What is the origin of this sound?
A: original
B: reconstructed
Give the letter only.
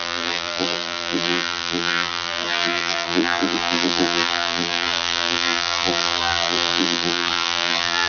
B